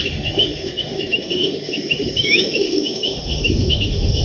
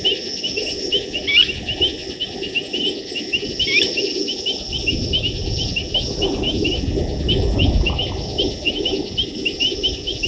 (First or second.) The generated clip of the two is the first